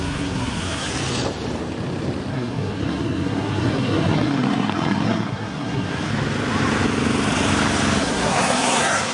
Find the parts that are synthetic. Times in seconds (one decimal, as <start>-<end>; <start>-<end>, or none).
0.0-0.9; 2.3-6.1; 8.0-9.1